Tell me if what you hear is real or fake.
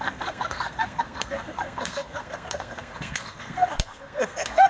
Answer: fake